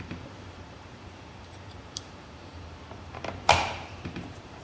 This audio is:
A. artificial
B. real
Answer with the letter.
A